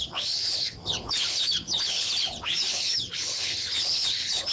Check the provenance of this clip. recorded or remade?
remade